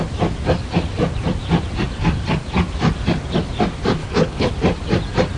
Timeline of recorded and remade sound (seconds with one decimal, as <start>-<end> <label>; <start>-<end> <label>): 0.0-4.0 recorded; 4.0-4.5 remade; 4.5-5.4 recorded